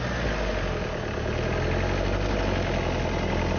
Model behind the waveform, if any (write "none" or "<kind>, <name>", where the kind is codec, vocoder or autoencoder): none